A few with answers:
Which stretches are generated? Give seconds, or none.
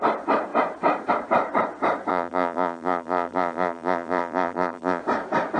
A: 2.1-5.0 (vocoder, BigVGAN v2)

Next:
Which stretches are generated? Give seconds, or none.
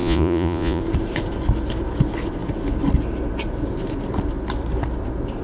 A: 0.0-0.8 (vocoder, Vocos)